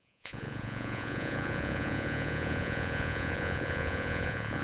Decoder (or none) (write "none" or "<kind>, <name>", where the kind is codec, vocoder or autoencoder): vocoder, Vocos